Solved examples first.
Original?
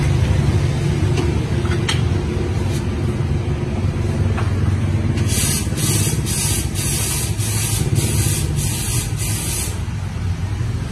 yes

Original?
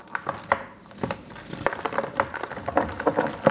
yes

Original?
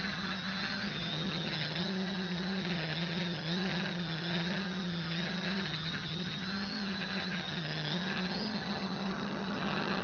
no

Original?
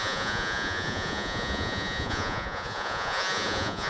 no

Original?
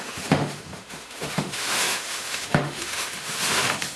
no